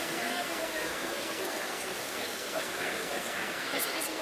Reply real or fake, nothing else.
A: fake